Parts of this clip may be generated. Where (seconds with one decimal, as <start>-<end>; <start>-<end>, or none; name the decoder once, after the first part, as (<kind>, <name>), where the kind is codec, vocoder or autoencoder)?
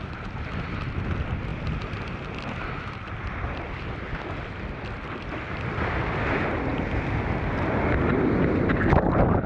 none